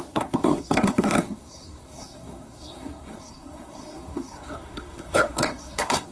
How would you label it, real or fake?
fake